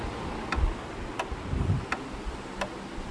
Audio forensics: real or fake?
real